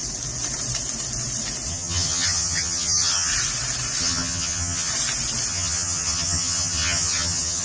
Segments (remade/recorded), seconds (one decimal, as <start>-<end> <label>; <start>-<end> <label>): 0.0-1.7 recorded; 1.7-3.3 remade; 3.3-4.0 recorded; 4.0-4.9 remade; 4.9-5.5 recorded; 5.5-7.6 remade